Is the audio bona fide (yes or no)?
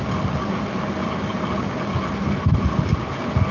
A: yes